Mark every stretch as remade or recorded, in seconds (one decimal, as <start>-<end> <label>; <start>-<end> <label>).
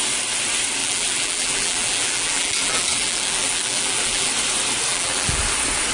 0.0-0.8 recorded; 0.8-4.3 remade; 4.3-4.9 recorded; 4.9-5.4 remade; 5.4-5.9 recorded